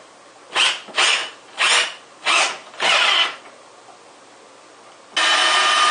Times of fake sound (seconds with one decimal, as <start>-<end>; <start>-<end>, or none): none